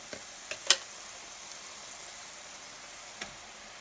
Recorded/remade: recorded